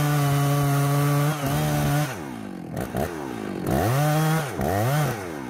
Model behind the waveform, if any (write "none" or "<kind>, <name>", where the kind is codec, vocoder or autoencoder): none